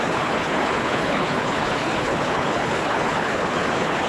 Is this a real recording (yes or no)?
no